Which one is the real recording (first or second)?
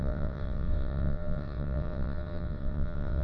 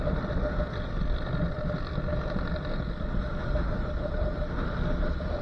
second